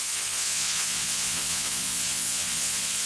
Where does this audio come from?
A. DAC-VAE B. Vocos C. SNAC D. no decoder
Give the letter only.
B